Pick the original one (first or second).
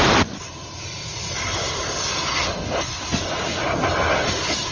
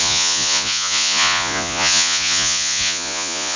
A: first